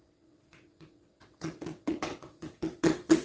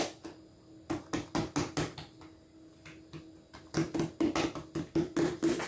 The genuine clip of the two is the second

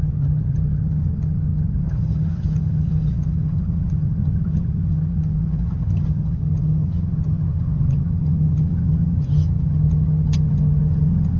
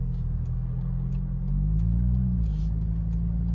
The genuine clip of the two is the second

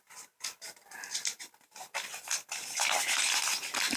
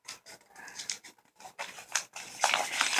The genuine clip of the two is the first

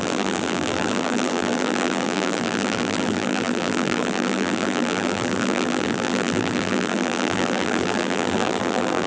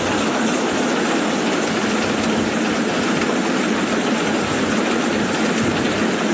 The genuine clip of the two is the second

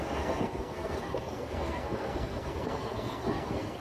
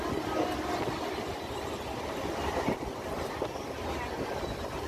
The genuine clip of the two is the second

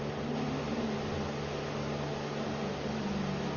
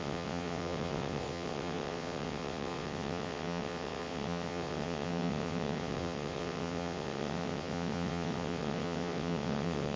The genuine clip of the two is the first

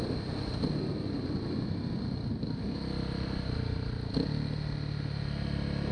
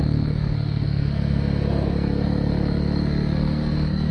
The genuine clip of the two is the first